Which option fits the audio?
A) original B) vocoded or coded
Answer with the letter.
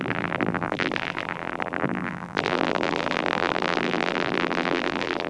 B